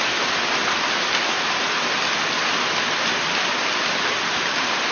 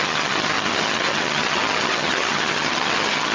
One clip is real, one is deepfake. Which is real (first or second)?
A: first